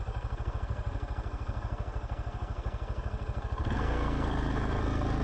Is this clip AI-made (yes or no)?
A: yes